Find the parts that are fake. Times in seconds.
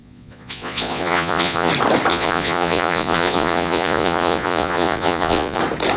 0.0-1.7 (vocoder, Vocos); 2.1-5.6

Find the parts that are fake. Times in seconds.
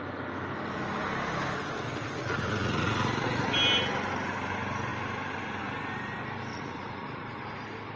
1.9-3.5 (vocoder, Vocos); 6.5-7.4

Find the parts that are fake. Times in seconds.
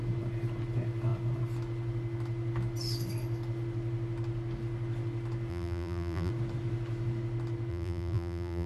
5.5-6.3 (vocoder, BigVGAN v2); 7.7-8.7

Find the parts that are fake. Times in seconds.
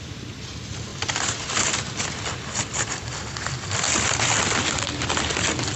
none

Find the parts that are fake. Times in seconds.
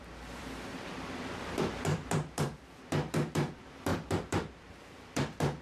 0.0-5.6 (vocoder, BigVGAN v2)